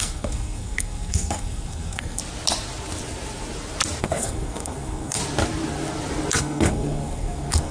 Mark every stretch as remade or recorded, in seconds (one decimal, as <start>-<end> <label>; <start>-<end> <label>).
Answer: 0.0-2.2 remade; 2.2-4.0 recorded; 4.0-5.2 remade; 5.2-6.4 recorded; 6.4-7.7 remade